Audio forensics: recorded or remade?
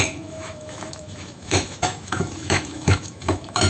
remade